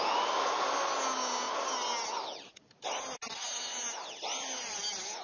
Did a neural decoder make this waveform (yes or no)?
no